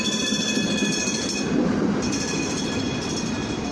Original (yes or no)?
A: yes